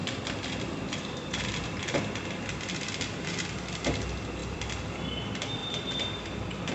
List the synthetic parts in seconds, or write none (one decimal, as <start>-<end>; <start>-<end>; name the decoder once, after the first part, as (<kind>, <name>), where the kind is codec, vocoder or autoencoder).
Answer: 0.0-1.8 (vocoder, BigVGAN v2); 4.4-4.9; 5.6-6.7